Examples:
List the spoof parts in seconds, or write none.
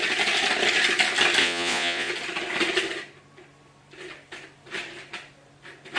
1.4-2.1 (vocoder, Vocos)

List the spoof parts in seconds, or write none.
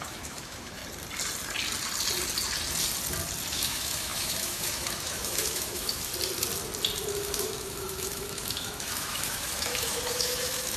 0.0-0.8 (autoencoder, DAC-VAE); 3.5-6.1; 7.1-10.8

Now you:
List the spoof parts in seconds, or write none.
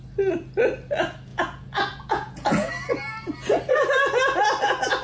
1.3-2.7 (vocoder, Vocos)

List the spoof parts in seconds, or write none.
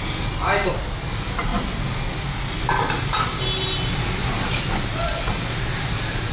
none